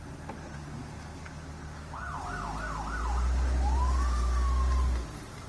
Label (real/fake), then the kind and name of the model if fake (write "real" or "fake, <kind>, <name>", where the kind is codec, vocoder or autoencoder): real